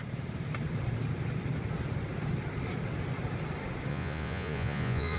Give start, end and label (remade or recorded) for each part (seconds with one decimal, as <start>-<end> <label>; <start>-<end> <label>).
0.0-3.9 recorded; 3.9-5.2 remade